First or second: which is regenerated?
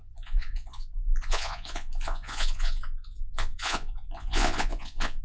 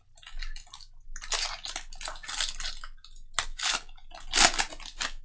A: first